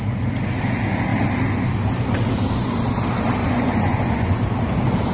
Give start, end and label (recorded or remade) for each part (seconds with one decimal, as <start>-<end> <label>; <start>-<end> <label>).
0.0-3.4 recorded; 3.4-4.4 remade; 4.4-5.1 recorded